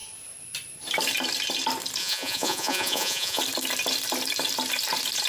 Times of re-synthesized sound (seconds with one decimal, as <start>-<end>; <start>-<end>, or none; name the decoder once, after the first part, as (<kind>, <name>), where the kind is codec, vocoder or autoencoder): 2.0-3.4 (vocoder, Vocos)